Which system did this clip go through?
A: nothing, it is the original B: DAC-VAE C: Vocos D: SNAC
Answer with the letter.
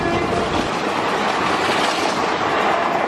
A